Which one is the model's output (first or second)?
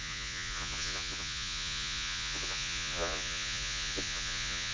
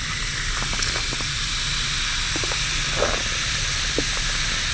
first